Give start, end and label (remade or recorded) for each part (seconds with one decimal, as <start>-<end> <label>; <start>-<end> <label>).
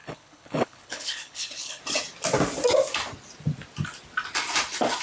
0.0-1.8 remade; 1.8-5.0 recorded